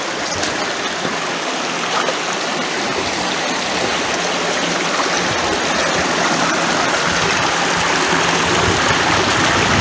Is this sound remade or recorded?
recorded